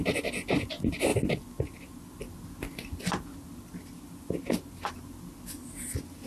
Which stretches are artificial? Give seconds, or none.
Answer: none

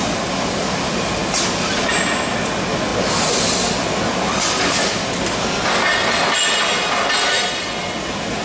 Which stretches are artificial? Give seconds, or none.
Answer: none

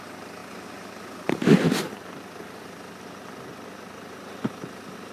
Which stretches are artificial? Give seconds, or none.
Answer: none

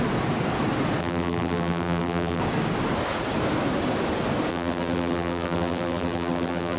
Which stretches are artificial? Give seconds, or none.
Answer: 1.0-2.4 (vocoder, BigVGAN v2); 4.5-6.8

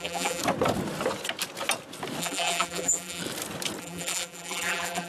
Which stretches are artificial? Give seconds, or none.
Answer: 0.0-0.4 (vocoder, BigVGAN v2); 2.2-3.2; 3.8-5.1

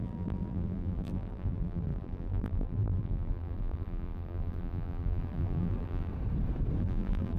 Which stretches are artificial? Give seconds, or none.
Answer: 0.0-6.1 (vocoder, BigVGAN v2); 6.8-7.4

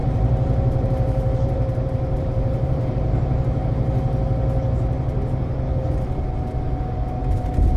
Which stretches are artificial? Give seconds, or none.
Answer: 0.0-3.7 (vocoder, BigVGAN v2)